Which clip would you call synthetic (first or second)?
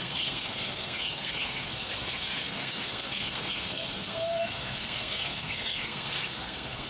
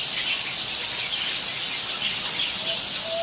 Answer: first